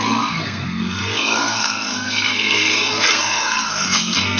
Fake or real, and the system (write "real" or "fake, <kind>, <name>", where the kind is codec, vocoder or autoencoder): fake, codec, SNAC